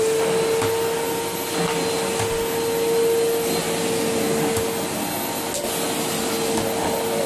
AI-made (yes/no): no